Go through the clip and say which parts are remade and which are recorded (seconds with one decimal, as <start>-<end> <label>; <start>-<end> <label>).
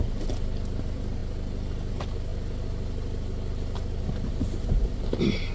0.0-1.2 remade; 1.2-1.9 recorded; 1.9-2.3 remade; 2.3-4.0 recorded; 4.0-5.5 remade